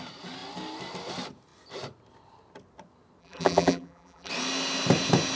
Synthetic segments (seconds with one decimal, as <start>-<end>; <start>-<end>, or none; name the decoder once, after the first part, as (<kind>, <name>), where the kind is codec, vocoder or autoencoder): 3.2-4.3 (vocoder, BigVGAN v2)

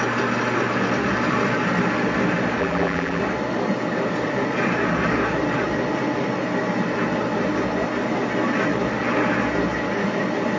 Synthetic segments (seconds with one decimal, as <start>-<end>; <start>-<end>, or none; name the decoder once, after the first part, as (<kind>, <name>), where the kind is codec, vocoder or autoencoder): 2.6-3.2 (vocoder, BigVGAN v2)